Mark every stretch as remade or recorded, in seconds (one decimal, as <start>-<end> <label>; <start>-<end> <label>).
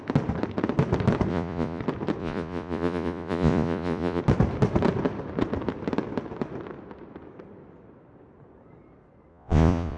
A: 0.0-1.3 recorded; 1.3-1.8 remade; 1.8-2.2 recorded; 2.2-4.2 remade; 4.2-9.3 recorded; 9.3-10.0 remade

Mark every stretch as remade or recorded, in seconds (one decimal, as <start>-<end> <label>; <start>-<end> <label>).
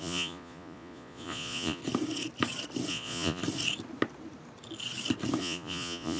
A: 0.0-1.8 remade; 1.8-2.9 recorded; 2.9-3.4 remade; 3.4-5.4 recorded; 5.4-6.2 remade